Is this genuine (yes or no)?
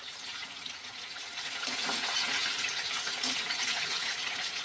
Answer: no